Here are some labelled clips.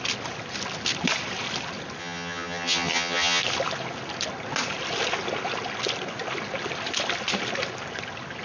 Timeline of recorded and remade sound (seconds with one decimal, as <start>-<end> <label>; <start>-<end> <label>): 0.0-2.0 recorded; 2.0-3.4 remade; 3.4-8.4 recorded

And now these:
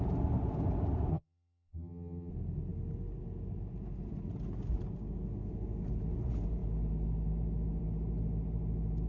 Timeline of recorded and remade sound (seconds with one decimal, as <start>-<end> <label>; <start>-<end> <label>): 0.0-1.1 recorded; 1.1-2.3 remade; 2.3-9.1 recorded

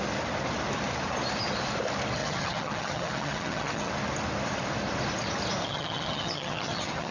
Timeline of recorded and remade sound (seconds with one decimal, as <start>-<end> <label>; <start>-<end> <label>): 0.0-2.2 recorded; 2.2-3.9 remade; 3.9-5.6 recorded; 5.6-7.1 remade

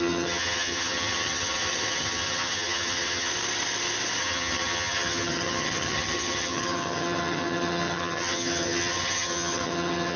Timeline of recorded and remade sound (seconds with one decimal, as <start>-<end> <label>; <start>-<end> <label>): 0.0-3.3 remade; 3.3-4.2 recorded; 4.2-10.2 remade

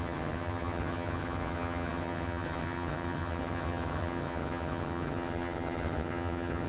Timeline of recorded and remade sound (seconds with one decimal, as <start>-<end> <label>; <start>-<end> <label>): 0.0-6.7 remade

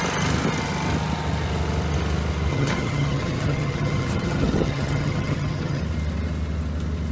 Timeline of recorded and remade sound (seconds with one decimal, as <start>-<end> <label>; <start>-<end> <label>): 0.0-2.5 recorded; 2.5-5.8 remade; 5.8-7.1 recorded

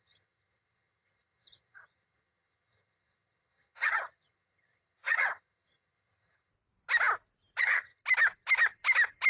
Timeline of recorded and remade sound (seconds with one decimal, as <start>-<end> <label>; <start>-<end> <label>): 0.0-6.5 remade; 6.5-7.6 recorded; 7.6-8.0 remade; 8.0-9.3 recorded